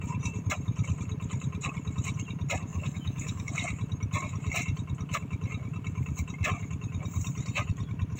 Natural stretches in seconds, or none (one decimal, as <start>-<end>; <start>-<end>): 0.0-2.7; 3.5-8.2